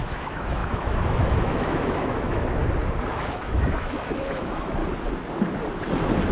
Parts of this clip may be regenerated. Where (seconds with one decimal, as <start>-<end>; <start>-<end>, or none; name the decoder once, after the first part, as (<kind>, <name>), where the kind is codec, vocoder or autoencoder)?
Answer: 0.0-2.6 (autoencoder, DAC-VAE); 3.1-4.8